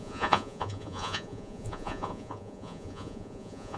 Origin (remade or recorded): remade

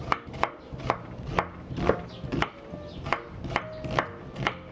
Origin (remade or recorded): recorded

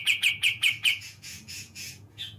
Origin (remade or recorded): remade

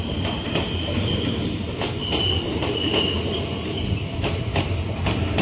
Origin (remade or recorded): recorded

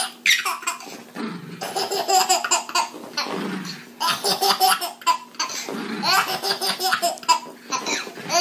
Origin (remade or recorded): recorded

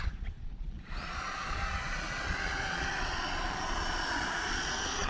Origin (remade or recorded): remade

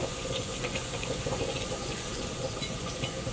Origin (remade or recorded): remade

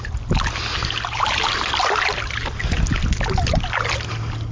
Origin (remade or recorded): recorded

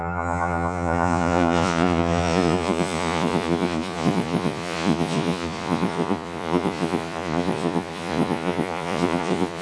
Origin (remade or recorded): remade